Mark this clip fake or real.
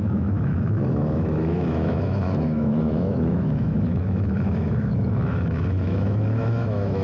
fake